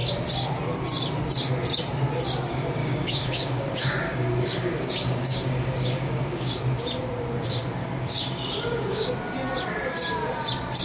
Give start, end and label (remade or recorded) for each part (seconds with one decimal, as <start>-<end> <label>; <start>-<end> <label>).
0.0-2.8 recorded; 2.8-6.6 remade; 6.6-7.8 recorded; 7.8-9.1 remade; 9.1-10.8 recorded